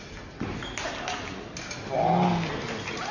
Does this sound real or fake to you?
real